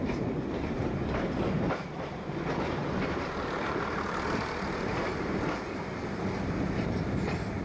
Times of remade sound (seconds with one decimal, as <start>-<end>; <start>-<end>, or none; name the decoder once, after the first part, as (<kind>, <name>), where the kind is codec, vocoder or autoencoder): 0.0-7.6 (vocoder, BigVGAN v2)